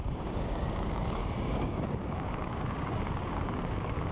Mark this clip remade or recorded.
remade